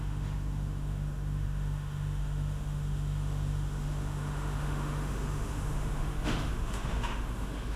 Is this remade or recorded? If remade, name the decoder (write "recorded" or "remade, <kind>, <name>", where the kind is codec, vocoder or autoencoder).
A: remade, autoencoder, DAC-VAE